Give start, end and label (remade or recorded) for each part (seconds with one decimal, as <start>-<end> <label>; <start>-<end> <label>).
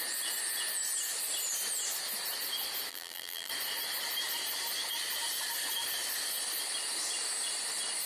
0.0-2.9 recorded; 2.9-3.5 remade; 3.5-8.1 recorded